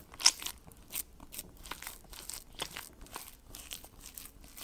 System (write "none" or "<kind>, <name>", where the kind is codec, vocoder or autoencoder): none